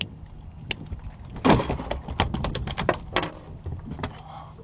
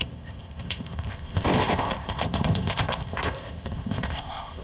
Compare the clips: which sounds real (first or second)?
first